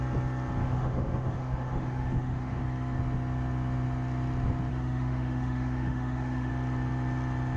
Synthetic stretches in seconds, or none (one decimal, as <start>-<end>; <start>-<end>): 0.6-2.6; 4.7-6.5